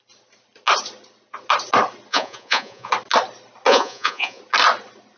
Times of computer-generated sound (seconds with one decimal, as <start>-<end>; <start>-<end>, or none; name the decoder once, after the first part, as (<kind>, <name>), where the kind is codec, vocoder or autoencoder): 2.1-2.9 (vocoder, Vocos); 3.7-4.4

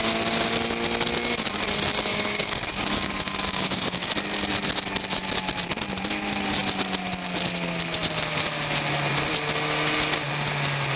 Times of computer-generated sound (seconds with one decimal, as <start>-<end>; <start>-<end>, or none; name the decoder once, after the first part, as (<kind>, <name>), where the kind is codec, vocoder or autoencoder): 2.1-4.1 (codec, DAC)

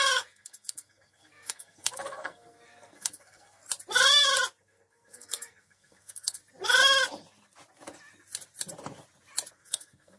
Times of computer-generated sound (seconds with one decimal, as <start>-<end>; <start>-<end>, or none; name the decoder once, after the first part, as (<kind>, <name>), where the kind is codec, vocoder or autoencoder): 0.0-3.6 (codec, SNAC); 4.6-6.4; 9.5-10.2

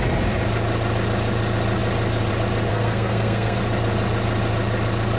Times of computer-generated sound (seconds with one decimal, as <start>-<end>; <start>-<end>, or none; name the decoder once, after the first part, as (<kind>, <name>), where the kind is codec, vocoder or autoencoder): 2.7-3.6 (codec, SNAC)

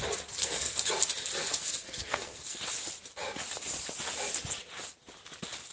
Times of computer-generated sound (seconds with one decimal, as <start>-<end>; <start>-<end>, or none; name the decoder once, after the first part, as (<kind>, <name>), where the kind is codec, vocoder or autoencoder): 0.4-0.9 (codec, SNAC); 1.4-2.6

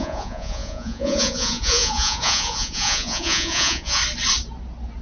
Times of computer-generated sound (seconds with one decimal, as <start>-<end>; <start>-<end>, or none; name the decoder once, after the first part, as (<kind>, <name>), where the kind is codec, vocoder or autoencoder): 0.0-4.0 (vocoder, Vocos)

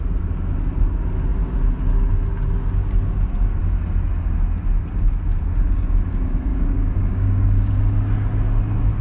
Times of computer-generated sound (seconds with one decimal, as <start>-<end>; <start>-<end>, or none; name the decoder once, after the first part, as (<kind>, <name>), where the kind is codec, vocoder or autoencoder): 6.5-7.8 (codec, DAC)

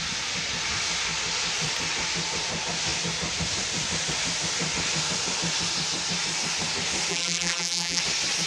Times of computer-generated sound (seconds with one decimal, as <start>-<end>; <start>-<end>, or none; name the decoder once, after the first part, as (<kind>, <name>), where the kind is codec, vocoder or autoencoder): 7.1-8.0 (vocoder, BigVGAN v2)